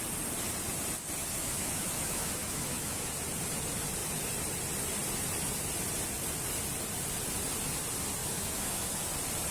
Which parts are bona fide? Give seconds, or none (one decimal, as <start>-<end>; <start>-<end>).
0.0-1.2; 3.1-8.2; 9.0-9.5